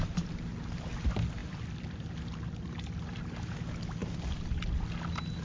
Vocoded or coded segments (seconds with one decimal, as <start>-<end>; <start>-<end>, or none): none

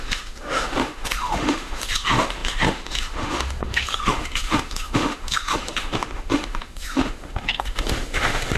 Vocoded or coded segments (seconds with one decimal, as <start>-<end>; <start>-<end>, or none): 0.0-8.6

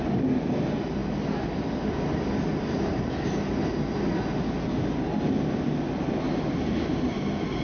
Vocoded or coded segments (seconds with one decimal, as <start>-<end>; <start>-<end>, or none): none

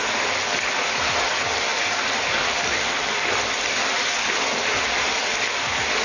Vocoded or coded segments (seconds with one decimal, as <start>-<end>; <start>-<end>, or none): none